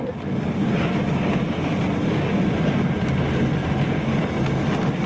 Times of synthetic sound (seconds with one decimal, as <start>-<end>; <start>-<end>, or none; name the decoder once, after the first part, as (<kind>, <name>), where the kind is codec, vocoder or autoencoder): none

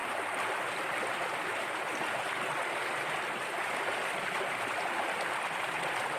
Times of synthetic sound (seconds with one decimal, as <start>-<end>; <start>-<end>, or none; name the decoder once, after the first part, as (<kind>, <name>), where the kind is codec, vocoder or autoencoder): none

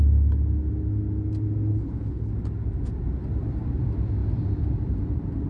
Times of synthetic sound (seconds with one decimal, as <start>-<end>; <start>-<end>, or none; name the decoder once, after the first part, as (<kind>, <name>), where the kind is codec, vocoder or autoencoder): 1.7-2.3 (codec, HILCodec)

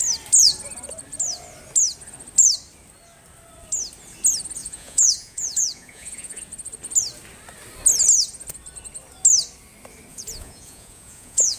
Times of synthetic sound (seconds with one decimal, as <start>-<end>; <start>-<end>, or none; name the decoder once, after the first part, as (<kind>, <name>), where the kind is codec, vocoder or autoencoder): 4.6-6.4 (vocoder, Vocos); 10.1-11.6

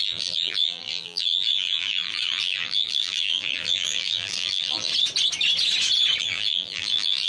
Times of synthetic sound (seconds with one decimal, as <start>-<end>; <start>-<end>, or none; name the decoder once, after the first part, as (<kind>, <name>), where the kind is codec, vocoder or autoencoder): 0.0-4.9 (vocoder, BigVGAN v2); 6.2-7.3

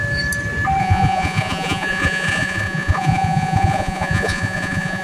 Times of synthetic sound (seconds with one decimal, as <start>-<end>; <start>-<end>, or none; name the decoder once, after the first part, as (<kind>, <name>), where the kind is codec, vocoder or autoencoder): 0.8-5.0 (vocoder, Vocos)

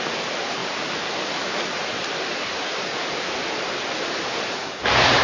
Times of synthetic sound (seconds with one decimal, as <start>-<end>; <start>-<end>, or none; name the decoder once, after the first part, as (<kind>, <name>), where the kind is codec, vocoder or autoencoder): none

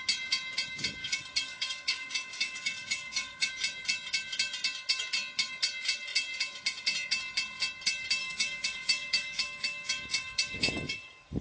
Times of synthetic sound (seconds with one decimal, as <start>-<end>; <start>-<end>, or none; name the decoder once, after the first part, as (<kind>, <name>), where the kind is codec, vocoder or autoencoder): 1.0-3.5 (codec, DAC); 8.2-11.4